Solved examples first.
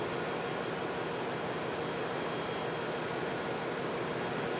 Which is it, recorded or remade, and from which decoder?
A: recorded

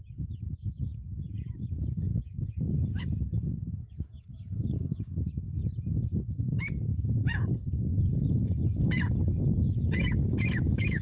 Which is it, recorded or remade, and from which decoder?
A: remade, codec, DAC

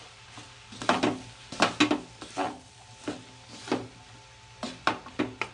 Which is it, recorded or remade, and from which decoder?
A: recorded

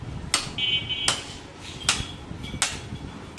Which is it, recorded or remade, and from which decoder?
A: recorded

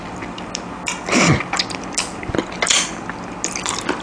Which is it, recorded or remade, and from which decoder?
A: recorded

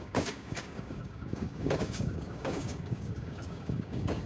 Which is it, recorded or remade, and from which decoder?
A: remade, codec, DAC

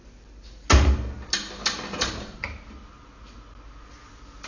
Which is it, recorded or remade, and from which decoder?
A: recorded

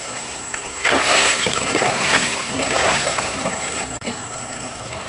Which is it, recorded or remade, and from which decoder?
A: remade, codec, SNAC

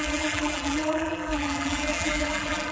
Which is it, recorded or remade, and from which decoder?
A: remade, vocoder, BigVGAN v2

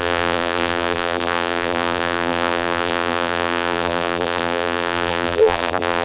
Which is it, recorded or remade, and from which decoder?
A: remade, vocoder, BigVGAN v2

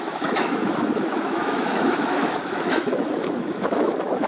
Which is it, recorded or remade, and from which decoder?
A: remade, autoencoder, DAC-VAE